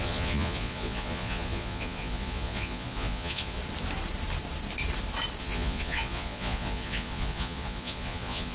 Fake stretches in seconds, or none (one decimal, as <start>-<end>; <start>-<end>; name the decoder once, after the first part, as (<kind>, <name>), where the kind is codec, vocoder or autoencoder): 0.0-3.6 (vocoder, Vocos); 5.4-8.5